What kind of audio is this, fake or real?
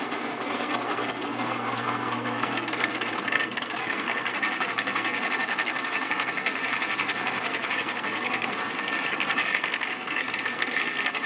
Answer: fake